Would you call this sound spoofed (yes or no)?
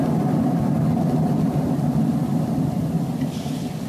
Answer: no